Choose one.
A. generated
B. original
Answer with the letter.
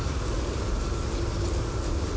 B